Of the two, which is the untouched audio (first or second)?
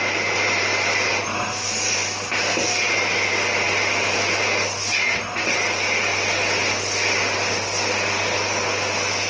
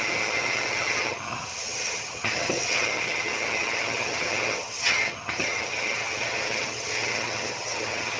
first